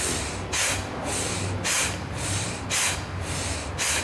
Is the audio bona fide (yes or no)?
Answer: yes